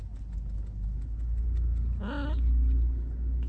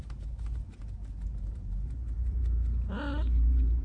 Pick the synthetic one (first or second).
second